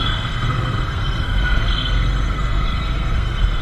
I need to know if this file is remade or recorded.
remade